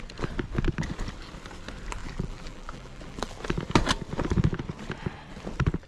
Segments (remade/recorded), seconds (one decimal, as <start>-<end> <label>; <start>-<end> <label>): 0.0-2.0 recorded; 2.0-3.4 remade; 3.4-5.9 recorded